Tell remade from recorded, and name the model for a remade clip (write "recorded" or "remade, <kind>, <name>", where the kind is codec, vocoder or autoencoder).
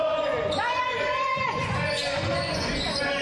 remade, vocoder, Vocos